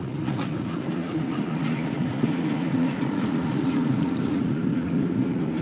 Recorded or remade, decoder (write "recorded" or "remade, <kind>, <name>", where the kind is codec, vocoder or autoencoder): remade, vocoder, Vocos